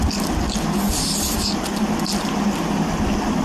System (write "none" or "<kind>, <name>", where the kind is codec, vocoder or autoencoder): none